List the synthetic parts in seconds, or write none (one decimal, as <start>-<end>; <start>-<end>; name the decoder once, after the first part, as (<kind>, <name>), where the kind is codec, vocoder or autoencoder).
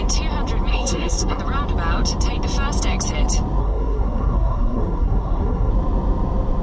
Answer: 0.7-1.4 (codec, SNAC); 3.6-5.7